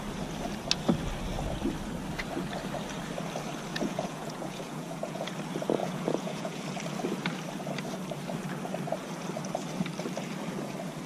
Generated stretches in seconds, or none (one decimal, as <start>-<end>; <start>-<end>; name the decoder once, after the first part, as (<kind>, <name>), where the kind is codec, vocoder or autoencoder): 3.7-5.3 (vocoder, Vocos); 5.8-6.6